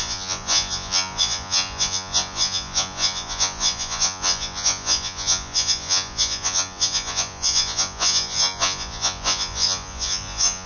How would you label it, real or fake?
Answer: fake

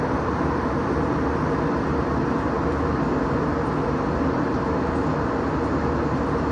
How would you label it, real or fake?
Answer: real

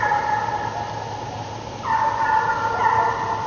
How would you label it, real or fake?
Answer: real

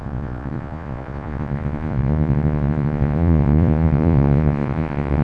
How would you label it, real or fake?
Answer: fake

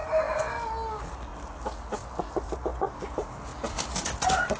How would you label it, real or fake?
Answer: real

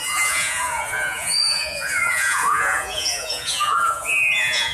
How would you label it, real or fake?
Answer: fake